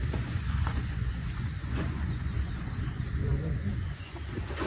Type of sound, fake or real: fake